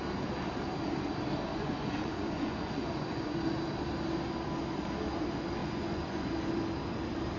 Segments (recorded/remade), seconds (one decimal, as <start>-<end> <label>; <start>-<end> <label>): 0.0-1.5 recorded; 1.5-3.4 remade; 3.4-5.6 recorded; 5.6-6.3 remade; 6.3-7.4 recorded